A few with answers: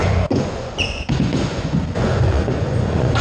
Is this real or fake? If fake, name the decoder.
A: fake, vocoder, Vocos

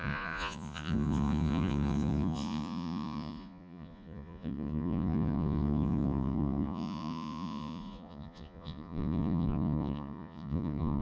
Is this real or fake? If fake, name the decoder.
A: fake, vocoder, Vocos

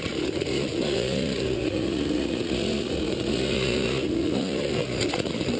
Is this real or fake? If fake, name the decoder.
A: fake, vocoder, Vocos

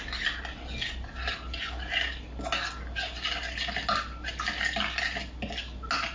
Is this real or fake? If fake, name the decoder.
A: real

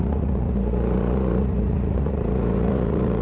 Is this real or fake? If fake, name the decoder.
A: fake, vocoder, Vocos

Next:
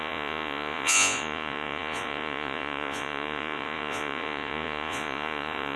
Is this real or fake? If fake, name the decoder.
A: fake, vocoder, Vocos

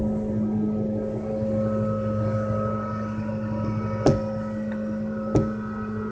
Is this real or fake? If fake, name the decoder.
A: real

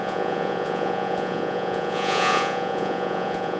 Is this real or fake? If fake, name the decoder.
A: fake, vocoder, Vocos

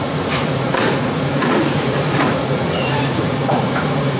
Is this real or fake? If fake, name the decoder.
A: fake, vocoder, Vocos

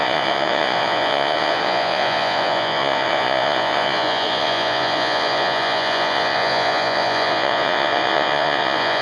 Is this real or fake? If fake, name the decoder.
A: fake, vocoder, Vocos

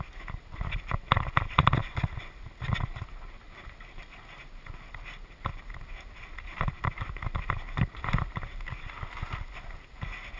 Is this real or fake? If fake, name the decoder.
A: real